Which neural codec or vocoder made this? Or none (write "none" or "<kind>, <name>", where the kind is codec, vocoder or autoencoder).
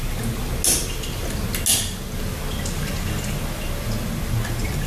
none